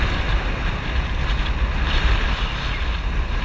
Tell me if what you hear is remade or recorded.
recorded